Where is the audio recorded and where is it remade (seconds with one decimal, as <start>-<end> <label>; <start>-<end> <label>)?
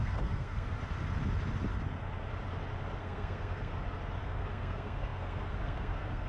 0.0-0.8 remade; 0.8-3.0 recorded; 3.0-3.7 remade; 3.7-4.2 recorded; 4.2-6.3 remade